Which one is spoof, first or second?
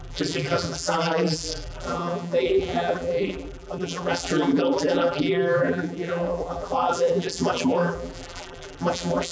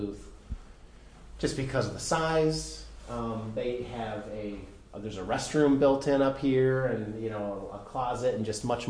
first